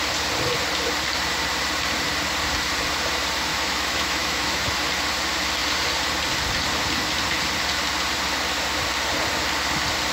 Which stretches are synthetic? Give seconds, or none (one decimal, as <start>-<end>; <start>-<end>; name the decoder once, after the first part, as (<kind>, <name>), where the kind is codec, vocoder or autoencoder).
3.5-4.7 (autoencoder, DAC-VAE)